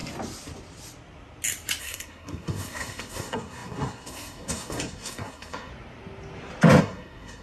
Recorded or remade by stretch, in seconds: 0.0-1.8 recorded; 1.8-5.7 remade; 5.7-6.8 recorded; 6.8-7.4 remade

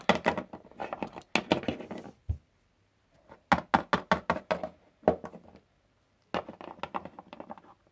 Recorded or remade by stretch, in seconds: 0.0-7.9 recorded

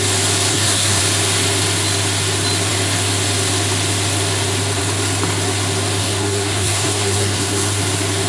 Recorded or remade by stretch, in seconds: 0.0-0.5 recorded; 0.5-1.0 remade; 1.0-6.0 recorded; 6.0-7.8 remade; 7.8-8.3 recorded

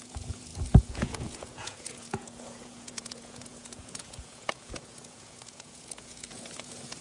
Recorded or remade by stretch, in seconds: 0.0-7.0 remade

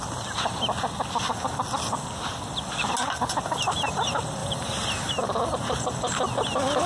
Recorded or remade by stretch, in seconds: 0.0-4.4 recorded; 4.4-5.1 remade; 5.1-6.9 recorded